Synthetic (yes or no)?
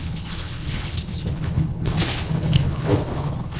yes